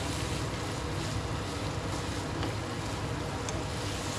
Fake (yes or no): no